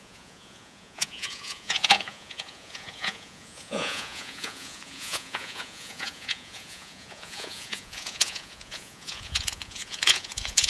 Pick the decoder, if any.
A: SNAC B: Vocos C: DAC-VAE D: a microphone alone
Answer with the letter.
B